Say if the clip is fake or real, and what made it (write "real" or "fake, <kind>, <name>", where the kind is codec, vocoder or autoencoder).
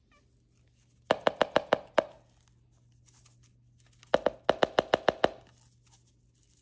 real